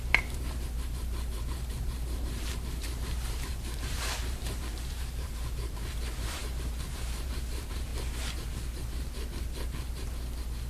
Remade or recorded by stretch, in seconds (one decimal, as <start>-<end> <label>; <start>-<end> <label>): 0.0-7.9 remade; 7.9-10.7 recorded